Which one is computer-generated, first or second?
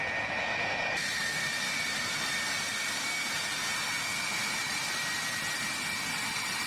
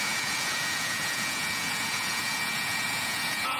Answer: second